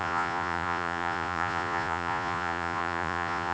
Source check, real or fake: fake